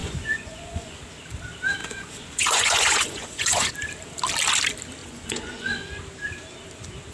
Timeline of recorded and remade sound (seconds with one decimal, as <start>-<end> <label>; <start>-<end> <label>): 0.0-1.0 remade; 1.0-1.8 recorded; 1.8-3.7 remade; 3.7-5.0 recorded; 5.0-6.0 remade; 6.0-7.1 recorded